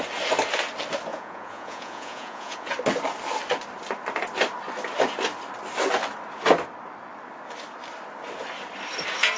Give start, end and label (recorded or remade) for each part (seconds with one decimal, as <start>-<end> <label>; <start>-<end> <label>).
0.0-1.1 recorded; 1.1-2.7 remade; 2.7-9.4 recorded